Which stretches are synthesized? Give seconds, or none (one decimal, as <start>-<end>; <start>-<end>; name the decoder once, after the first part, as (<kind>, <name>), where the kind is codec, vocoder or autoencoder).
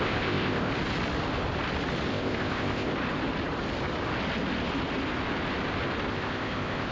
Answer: 0.0-0.7 (codec, ZipCodec); 2.1-2.9; 6.1-6.9